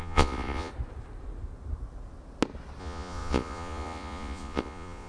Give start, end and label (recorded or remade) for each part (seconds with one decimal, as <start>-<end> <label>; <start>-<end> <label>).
0.0-0.7 remade; 0.7-2.8 recorded; 2.8-5.1 remade